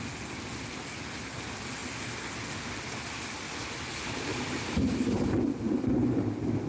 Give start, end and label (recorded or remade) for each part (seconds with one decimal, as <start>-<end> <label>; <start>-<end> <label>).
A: 0.0-4.3 recorded; 4.3-5.4 remade; 5.4-6.7 recorded